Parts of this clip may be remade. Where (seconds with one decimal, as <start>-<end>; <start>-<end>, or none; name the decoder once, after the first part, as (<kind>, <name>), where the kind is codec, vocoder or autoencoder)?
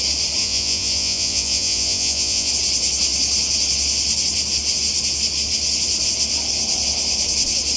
0.4-2.5 (vocoder, Vocos)